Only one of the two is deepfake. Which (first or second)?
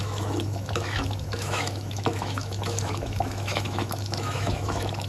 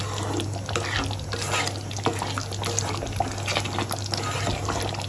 first